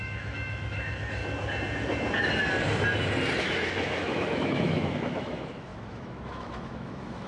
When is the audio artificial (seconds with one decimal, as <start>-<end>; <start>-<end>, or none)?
0.0-1.2; 3.4-7.3

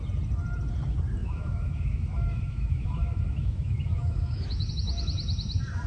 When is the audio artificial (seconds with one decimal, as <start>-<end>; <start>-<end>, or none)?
1.2-4.7

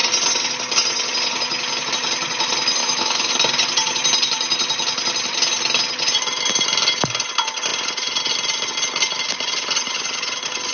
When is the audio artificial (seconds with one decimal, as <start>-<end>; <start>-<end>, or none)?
2.8-3.3

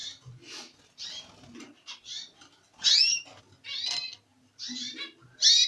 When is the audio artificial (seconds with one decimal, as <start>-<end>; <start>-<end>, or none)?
none